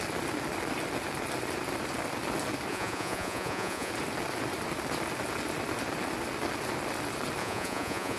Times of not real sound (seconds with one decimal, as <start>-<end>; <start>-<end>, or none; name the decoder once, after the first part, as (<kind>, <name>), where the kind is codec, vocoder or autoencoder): 2.7-3.9 (vocoder, Vocos); 7.4-8.2